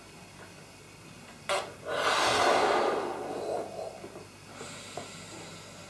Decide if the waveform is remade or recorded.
recorded